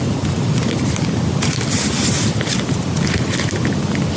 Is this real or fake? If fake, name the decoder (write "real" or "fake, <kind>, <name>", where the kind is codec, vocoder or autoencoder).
real